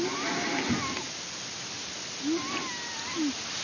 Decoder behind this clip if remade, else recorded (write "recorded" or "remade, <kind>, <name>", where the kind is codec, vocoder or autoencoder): recorded